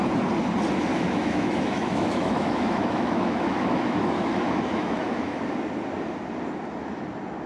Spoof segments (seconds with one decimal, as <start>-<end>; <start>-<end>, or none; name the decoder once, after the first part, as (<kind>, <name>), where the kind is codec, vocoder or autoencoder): 0.9-5.4 (autoencoder, DAC-VAE)